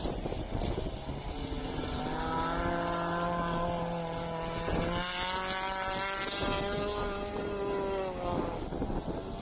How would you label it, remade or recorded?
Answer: recorded